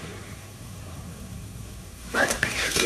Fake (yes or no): yes